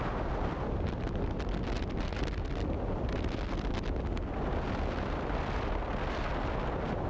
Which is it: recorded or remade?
recorded